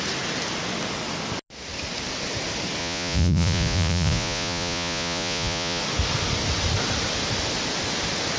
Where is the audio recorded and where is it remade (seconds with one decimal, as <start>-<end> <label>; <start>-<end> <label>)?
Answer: 0.0-2.8 recorded; 2.8-5.8 remade; 5.8-8.4 recorded